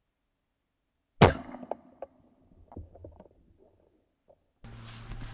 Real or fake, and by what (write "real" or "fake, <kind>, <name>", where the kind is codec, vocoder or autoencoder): real